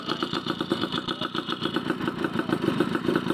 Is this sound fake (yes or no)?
yes